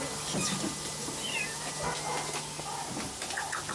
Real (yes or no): yes